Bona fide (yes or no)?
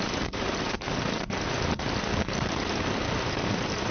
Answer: no